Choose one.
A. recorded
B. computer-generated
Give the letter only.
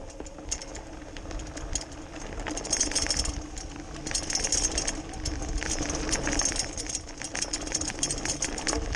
A